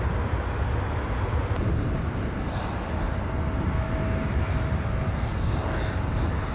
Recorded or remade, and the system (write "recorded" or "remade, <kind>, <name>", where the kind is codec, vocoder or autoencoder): recorded